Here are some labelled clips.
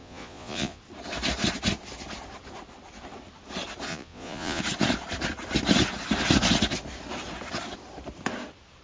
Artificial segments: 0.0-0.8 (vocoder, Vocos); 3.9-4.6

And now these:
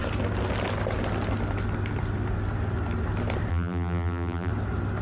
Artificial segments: 3.5-4.5 (vocoder, BigVGAN v2)